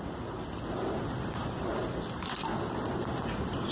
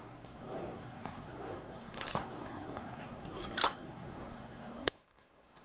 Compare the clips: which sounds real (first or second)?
first